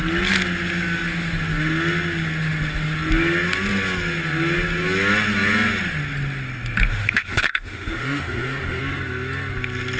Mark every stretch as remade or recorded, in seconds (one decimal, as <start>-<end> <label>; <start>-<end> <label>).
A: 0.0-6.9 recorded; 6.9-8.8 remade; 8.8-10.0 recorded